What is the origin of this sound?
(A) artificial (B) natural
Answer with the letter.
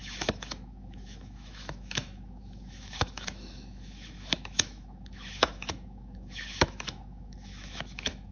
A